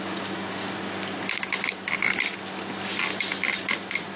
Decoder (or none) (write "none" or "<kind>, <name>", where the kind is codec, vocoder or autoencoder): none